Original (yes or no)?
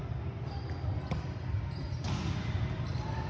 yes